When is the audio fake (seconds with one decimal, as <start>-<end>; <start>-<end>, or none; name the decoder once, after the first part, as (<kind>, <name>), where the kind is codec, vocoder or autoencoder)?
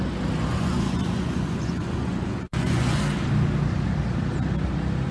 0.5-3.0 (vocoder, Vocos)